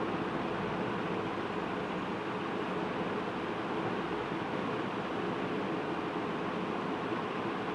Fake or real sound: real